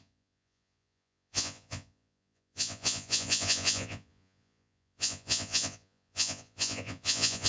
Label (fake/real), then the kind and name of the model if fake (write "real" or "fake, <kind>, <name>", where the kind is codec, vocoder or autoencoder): fake, vocoder, Vocos